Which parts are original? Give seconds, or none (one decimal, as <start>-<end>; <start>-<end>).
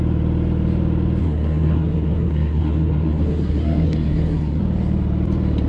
0.0-1.2; 4.6-5.7